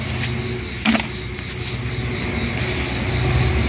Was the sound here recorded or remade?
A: recorded